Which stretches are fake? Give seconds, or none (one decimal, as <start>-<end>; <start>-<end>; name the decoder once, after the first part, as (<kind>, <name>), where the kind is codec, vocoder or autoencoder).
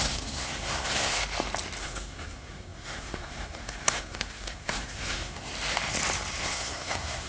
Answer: 0.0-1.2 (codec, SNAC); 1.8-5.5; 6.4-7.3